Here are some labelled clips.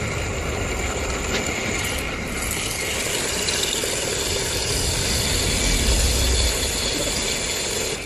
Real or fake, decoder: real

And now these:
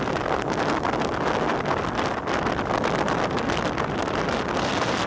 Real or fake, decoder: real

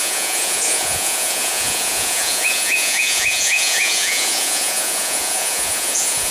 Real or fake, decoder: fake, vocoder, Vocos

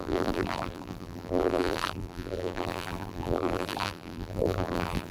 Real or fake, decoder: fake, vocoder, BigVGAN v2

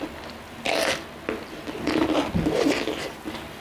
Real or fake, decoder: real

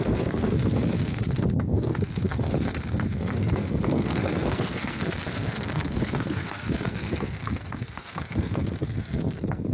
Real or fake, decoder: fake, codec, SNAC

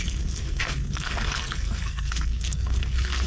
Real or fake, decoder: fake, codec, SNAC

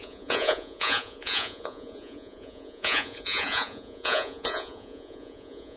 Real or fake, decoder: fake, vocoder, Vocos